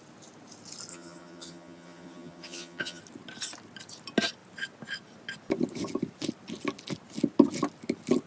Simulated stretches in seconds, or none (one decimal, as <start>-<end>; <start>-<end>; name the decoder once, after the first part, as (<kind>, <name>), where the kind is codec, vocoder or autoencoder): 0.9-3.0 (vocoder, HiFi-GAN)